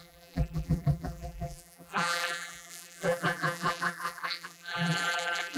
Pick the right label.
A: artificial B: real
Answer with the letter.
A